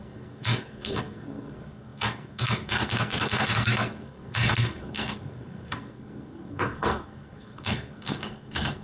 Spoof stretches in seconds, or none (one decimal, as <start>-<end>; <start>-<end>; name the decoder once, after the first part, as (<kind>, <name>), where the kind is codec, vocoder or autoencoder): 0.0-8.8 (codec, SNAC)